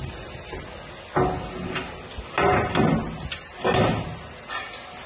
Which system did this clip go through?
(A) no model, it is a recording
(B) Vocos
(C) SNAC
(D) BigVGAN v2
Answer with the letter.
A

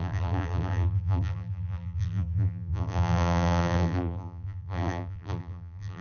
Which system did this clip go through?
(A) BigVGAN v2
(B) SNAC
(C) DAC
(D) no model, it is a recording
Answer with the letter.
A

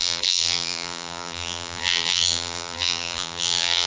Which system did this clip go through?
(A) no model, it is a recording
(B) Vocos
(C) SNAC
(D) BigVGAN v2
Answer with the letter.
D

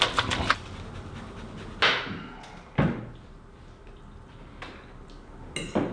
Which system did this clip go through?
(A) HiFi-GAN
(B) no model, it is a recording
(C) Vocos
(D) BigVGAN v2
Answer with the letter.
B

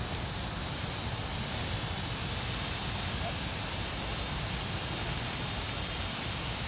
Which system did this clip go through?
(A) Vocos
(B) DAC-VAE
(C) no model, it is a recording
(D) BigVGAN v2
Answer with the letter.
C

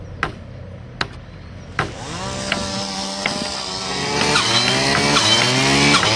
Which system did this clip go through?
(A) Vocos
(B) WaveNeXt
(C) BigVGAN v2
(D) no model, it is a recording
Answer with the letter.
D